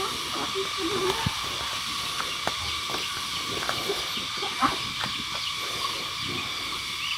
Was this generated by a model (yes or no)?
no